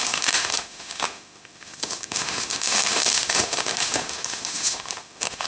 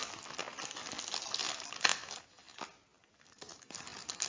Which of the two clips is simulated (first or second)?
first